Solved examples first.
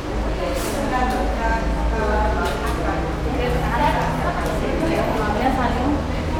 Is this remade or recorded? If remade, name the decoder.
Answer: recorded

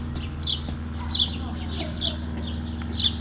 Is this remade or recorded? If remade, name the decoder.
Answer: recorded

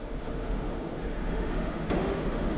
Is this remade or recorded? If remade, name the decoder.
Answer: remade, autoencoder, DAC-VAE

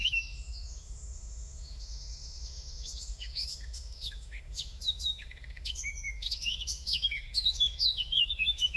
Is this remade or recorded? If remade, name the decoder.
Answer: remade, autoencoder, DAC-VAE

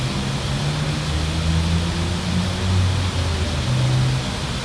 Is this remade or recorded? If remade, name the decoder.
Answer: recorded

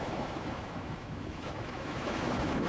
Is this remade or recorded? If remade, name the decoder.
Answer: remade, autoencoder, DAC-VAE